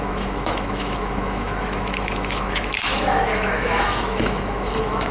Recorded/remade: remade